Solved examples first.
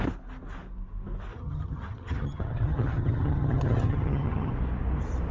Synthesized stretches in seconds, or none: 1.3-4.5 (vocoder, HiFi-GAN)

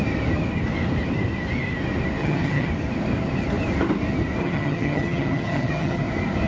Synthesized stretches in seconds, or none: 2.2-2.7 (vocoder, HiFi-GAN); 4.4-6.0